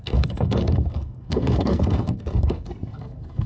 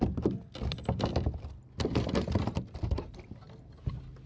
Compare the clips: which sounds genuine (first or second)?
second